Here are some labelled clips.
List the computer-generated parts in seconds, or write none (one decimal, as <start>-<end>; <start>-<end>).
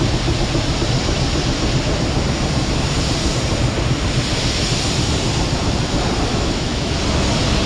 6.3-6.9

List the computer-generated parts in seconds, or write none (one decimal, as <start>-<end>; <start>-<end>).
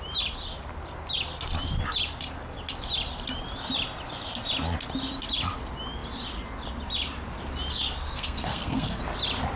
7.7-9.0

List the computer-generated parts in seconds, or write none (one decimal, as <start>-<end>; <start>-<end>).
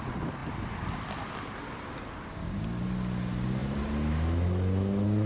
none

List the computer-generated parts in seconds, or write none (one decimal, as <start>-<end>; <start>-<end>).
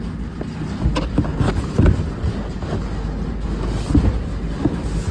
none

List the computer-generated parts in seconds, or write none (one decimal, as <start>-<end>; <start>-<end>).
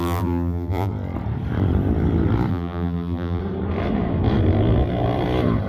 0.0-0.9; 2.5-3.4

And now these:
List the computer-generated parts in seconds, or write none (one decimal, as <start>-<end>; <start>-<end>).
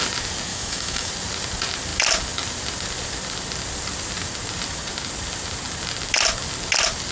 0.5-1.1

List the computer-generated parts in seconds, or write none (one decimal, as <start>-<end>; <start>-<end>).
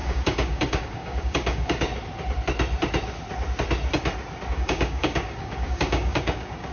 0.0-1.9; 4.5-6.7